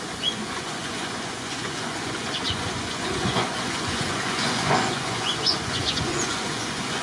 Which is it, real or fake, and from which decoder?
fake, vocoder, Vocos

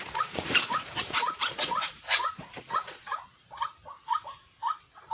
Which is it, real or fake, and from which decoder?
fake, vocoder, Vocos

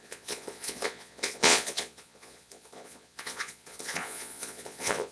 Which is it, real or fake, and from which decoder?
fake, vocoder, Vocos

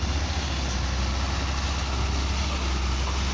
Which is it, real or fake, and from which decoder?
real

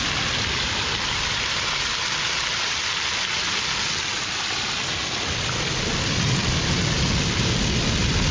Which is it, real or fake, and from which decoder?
real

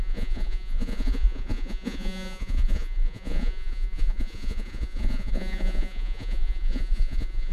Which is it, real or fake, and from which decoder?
fake, vocoder, Vocos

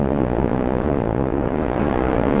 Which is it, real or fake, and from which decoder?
fake, vocoder, Vocos